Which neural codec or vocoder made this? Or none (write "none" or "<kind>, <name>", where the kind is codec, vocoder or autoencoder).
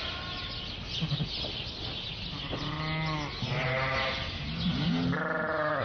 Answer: none